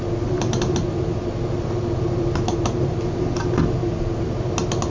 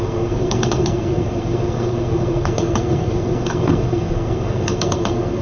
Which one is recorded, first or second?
first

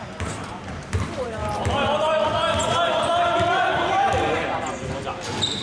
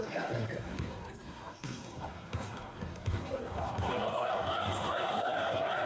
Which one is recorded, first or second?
first